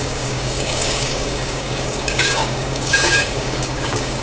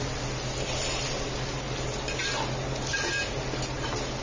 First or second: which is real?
second